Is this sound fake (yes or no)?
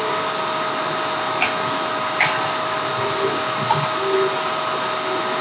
no